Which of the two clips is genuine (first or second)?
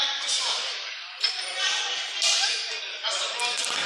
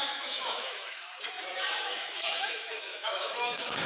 first